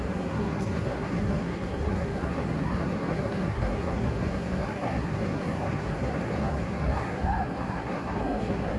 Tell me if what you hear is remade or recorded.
remade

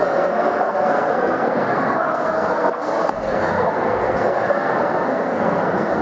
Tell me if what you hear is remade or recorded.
remade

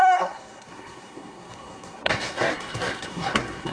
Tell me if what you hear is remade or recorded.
remade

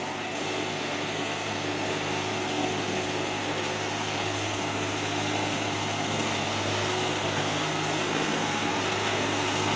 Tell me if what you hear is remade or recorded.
remade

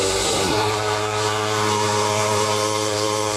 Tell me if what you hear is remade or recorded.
remade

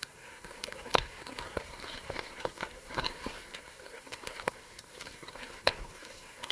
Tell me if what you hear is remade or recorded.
remade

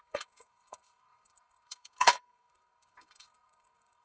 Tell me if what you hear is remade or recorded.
remade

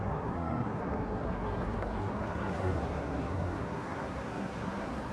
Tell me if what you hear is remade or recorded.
remade